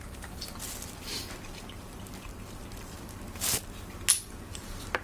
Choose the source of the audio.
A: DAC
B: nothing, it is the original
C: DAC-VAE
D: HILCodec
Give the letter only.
B